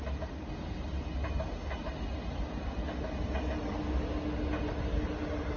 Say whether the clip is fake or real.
real